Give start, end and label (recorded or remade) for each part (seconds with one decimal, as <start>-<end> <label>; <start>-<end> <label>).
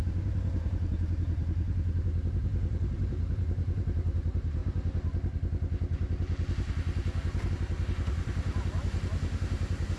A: 0.0-4.6 remade; 4.6-7.5 recorded; 7.5-10.0 remade